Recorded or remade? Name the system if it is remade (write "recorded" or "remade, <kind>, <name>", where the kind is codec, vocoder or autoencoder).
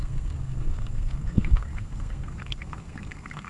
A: remade, codec, SNAC